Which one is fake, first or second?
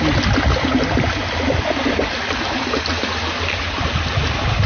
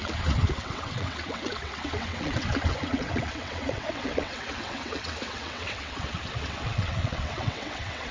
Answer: second